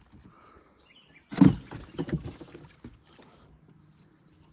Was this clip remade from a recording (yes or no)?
no